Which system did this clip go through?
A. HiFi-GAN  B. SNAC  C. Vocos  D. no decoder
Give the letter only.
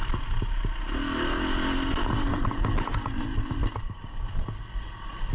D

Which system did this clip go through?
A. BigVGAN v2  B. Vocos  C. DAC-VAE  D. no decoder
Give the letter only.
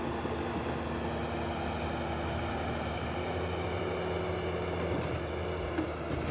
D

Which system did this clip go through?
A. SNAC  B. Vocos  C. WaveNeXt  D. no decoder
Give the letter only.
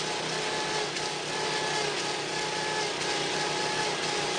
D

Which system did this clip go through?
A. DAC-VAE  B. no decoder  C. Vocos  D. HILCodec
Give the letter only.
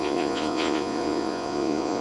C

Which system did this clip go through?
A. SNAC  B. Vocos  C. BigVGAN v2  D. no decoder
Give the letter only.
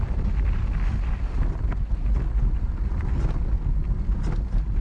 D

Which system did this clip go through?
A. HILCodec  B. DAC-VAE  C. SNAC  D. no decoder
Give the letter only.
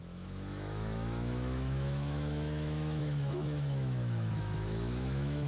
B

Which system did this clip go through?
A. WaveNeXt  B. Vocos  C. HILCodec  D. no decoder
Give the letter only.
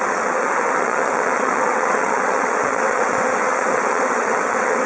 A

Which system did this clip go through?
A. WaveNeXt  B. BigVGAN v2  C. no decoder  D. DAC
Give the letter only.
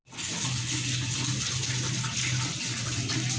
C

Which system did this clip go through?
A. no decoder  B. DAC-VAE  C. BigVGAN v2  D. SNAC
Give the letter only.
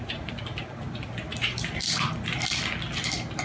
A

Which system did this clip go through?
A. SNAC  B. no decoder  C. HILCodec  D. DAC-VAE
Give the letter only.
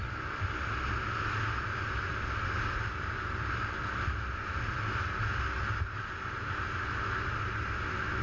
B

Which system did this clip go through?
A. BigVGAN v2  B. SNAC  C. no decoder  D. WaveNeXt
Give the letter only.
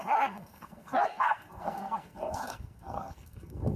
B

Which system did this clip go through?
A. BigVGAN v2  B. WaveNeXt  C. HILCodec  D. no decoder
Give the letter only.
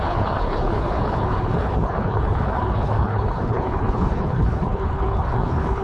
C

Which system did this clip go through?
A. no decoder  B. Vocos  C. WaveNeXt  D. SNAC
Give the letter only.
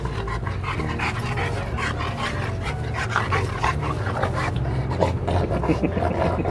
A